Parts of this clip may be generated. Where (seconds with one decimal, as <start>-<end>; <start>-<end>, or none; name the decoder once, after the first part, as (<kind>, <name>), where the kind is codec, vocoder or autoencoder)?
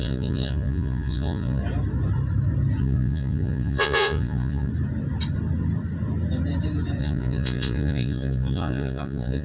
0.0-1.6 (vocoder, Vocos); 2.8-4.7; 7.0-9.4